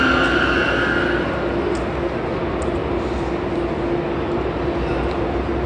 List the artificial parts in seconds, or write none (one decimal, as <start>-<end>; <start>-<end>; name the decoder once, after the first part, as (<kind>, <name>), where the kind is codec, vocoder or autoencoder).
none